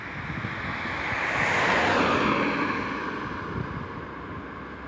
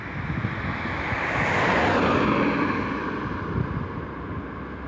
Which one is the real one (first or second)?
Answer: first